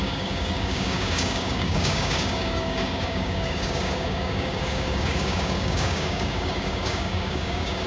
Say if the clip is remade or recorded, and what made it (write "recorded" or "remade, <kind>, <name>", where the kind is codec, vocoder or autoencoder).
remade, codec, DAC